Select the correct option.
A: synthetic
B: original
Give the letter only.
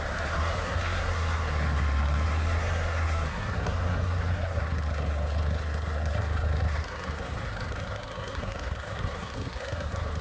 A